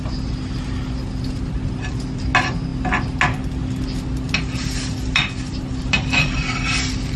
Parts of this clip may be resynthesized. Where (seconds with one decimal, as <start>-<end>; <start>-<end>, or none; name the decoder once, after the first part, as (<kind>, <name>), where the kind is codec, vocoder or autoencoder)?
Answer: none